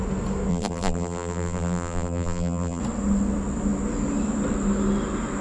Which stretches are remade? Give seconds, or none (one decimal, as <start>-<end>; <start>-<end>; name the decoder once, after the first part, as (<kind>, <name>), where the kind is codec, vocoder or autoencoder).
0.5-2.8 (vocoder, BigVGAN v2)

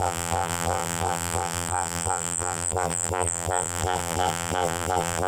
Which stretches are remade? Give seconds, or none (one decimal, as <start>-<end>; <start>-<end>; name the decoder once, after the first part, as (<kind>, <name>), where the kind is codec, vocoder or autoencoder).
0.0-5.3 (vocoder, BigVGAN v2)

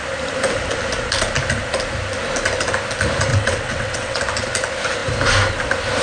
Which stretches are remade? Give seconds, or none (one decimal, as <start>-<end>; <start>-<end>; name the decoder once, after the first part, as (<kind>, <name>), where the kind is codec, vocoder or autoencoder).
3.3-4.2 (vocoder, WaveNeXt)